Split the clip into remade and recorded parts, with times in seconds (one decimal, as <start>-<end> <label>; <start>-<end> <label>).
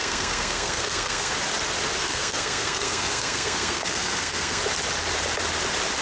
0.0-1.3 remade; 1.3-2.0 recorded; 2.0-4.6 remade; 4.6-6.0 recorded